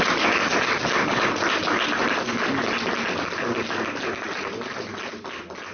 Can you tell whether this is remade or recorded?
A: recorded